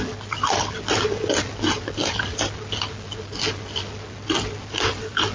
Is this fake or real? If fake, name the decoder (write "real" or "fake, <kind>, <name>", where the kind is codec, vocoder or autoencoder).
real